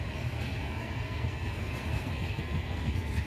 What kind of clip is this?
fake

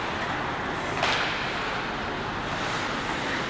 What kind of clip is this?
real